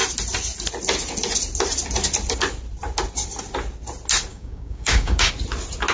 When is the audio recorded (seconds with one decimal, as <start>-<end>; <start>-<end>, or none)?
0.0-4.3; 5.3-5.9